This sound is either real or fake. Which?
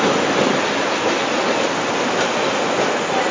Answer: real